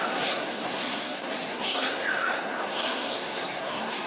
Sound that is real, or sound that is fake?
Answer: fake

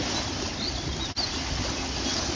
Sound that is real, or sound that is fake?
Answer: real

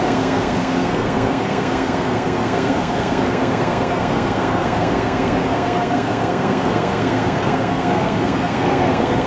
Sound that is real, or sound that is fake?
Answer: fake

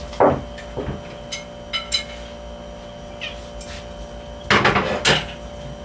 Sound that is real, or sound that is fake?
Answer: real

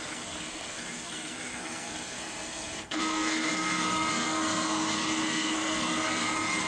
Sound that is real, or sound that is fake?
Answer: fake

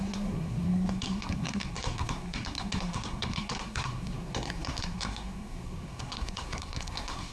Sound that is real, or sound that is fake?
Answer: fake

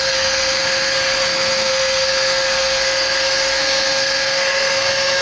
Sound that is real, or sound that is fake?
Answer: fake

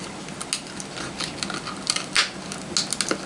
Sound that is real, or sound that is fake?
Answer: real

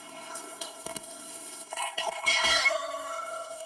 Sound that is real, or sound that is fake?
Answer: fake